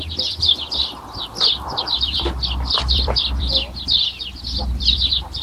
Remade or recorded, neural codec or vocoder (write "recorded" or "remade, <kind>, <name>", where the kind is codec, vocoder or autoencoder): remade, vocoder, BigVGAN v2